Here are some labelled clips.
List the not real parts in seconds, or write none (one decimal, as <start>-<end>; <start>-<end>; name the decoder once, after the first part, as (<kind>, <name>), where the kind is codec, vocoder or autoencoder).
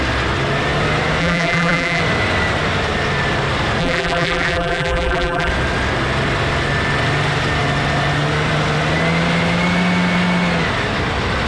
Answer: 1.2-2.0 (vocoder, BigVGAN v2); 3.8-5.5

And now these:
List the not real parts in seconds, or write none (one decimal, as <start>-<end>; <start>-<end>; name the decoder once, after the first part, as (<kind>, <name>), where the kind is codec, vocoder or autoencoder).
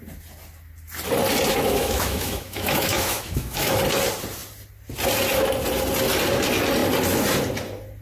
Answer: 1.5-3.8 (autoencoder, DAC-VAE)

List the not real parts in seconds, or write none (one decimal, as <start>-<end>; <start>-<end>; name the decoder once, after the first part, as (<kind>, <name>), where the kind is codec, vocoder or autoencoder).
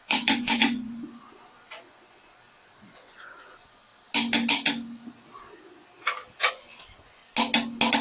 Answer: 0.0-3.9 (vocoder, Vocos); 6.5-7.2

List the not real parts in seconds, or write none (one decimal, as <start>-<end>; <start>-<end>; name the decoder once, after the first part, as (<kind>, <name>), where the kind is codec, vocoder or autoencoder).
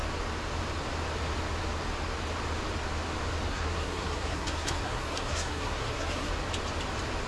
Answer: 3.5-6.3 (codec, SNAC)